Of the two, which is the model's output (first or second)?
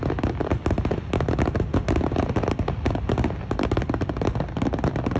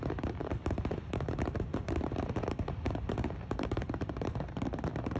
second